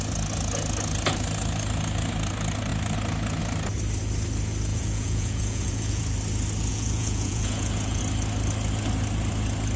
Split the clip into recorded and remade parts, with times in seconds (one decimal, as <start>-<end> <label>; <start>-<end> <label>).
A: 0.0-4.7 recorded; 4.7-6.0 remade; 6.0-6.7 recorded; 6.7-8.0 remade; 8.0-9.8 recorded